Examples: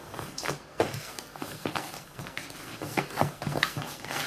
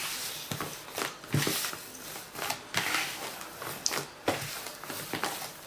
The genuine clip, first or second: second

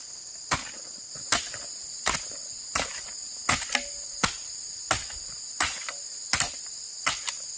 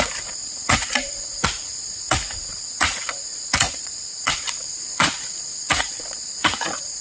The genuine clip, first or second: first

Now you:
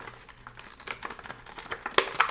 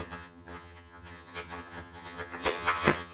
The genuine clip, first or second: first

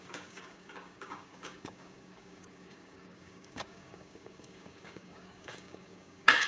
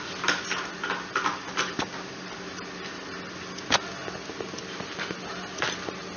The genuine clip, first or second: second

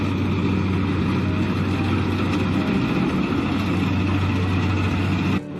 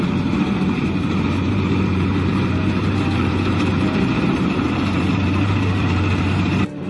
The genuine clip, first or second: first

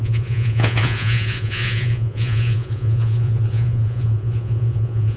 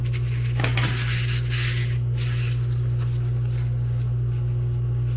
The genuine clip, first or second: second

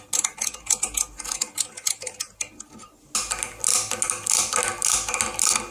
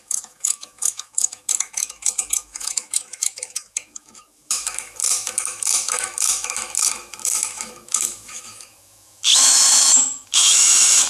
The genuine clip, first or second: first